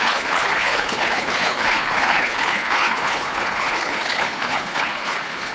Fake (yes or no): yes